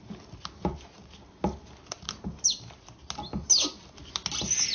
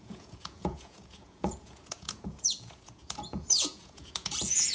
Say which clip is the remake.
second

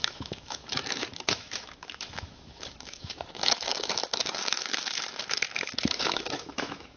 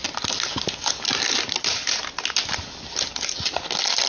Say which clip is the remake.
first